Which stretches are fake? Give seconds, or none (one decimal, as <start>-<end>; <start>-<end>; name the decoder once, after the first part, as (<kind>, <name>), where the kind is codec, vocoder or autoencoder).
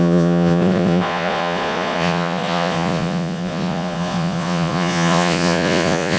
0.0-6.2 (vocoder, Vocos)